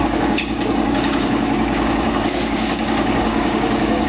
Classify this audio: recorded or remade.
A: remade